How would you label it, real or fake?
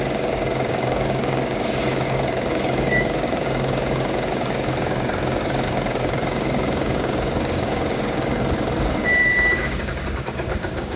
fake